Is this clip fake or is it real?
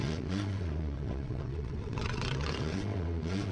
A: fake